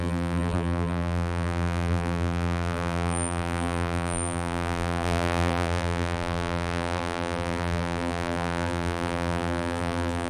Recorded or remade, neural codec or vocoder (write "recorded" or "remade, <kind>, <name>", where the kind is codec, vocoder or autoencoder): remade, vocoder, BigVGAN v2